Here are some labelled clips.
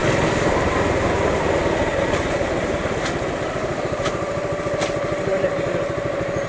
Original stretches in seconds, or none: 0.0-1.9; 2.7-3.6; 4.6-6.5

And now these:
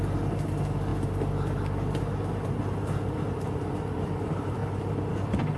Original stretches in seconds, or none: 0.9-2.6; 4.6-5.1

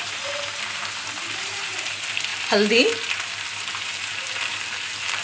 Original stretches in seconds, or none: 2.3-3.8